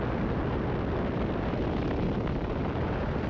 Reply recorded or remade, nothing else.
recorded